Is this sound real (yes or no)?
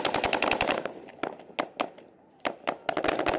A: yes